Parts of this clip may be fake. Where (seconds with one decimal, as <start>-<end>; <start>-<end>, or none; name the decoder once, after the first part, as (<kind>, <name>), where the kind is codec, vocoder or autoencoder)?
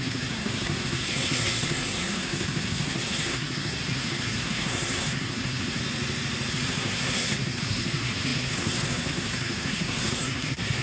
0.0-5.8 (codec, SNAC); 6.5-10.8